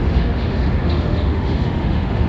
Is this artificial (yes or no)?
yes